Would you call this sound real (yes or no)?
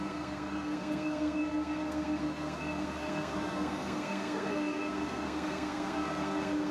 no